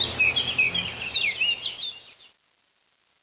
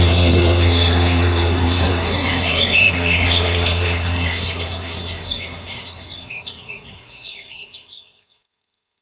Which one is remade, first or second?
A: second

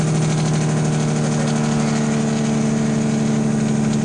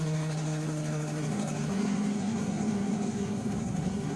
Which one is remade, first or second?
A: second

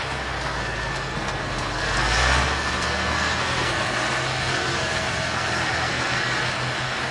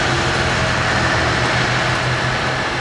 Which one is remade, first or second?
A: first